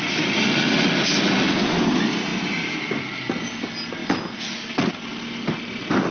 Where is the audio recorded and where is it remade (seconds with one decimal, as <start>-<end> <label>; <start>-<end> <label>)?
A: 0.0-6.1 recorded